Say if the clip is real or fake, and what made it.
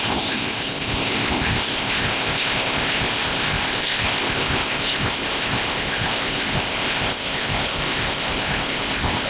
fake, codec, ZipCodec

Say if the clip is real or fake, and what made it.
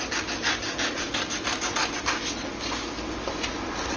real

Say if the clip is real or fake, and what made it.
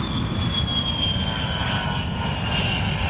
real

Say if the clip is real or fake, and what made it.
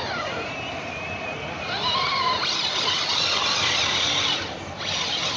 real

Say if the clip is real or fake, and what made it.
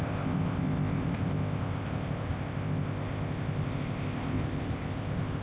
fake, codec, ZipCodec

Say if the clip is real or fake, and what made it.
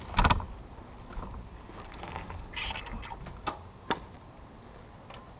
real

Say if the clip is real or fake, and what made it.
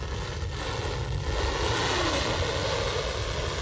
real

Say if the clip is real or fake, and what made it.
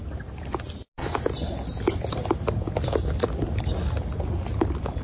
real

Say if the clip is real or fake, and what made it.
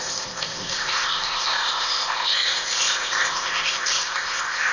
fake, codec, ZipCodec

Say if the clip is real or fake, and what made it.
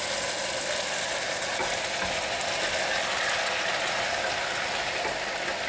real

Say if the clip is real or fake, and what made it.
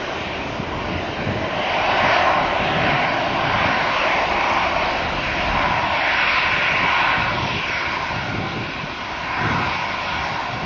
real